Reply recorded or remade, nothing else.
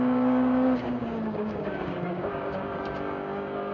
remade